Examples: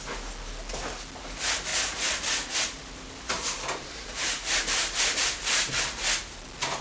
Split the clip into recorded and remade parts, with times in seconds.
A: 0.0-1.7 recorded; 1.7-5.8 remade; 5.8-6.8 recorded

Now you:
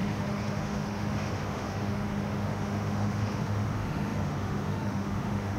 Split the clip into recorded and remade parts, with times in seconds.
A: 0.0-5.6 remade

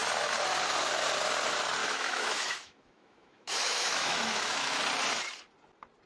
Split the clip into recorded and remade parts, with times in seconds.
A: 0.0-1.8 recorded; 1.8-4.8 remade; 4.8-6.1 recorded

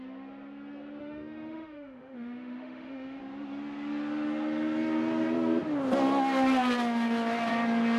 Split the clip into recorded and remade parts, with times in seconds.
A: 0.0-1.0 recorded; 1.0-3.2 remade; 3.2-8.0 recorded

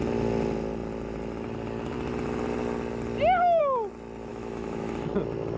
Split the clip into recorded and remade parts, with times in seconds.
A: 0.0-4.3 recorded; 4.3-4.9 remade; 4.9-5.6 recorded